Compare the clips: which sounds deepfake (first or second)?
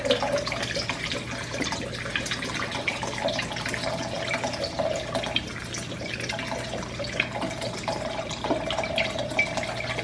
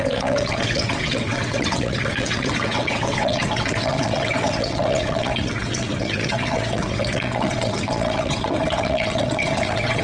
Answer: second